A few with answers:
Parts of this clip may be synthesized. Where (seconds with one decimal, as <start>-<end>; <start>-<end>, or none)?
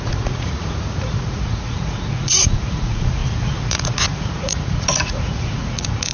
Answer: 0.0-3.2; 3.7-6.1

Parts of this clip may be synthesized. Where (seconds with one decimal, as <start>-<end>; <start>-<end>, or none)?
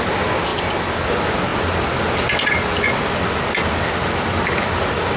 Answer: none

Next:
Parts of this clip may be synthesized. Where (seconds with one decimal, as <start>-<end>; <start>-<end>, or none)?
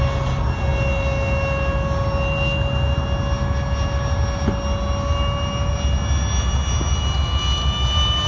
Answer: none